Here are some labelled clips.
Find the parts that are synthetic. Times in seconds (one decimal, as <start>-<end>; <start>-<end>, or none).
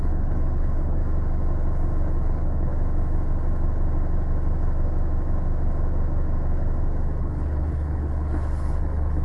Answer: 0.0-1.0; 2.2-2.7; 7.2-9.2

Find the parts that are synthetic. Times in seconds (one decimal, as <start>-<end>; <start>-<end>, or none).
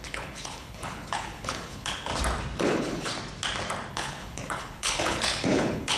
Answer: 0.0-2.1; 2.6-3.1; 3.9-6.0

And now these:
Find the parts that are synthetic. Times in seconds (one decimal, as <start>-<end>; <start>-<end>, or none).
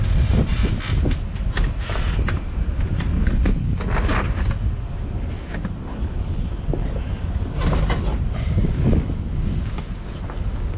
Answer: 3.2-3.8; 5.9-6.5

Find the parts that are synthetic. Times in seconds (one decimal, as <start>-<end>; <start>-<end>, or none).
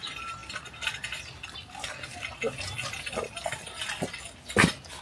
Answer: none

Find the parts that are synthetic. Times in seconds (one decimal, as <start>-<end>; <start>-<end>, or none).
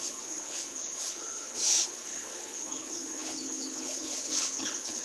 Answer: 0.0-5.0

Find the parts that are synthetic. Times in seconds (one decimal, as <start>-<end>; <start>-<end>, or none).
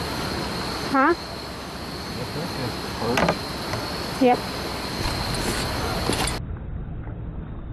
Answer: none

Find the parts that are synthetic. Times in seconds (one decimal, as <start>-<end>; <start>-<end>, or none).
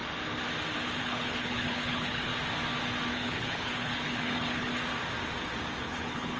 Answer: 1.0-2.3; 3.1-4.7; 5.8-6.4